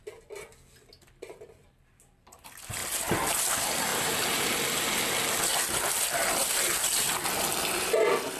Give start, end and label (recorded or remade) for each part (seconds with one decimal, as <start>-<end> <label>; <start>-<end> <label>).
0.0-3.9 recorded; 3.9-5.0 remade; 5.0-6.4 recorded; 6.4-7.1 remade; 7.1-8.4 recorded